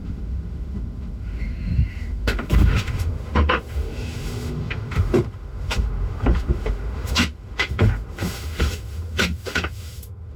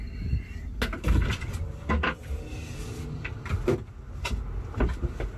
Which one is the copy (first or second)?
first